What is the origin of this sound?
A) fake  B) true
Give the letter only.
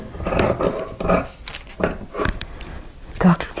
B